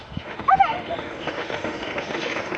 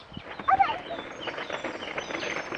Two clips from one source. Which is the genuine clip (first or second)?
second